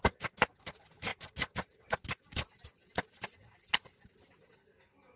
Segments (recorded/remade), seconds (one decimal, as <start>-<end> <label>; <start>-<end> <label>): 0.0-5.2 recorded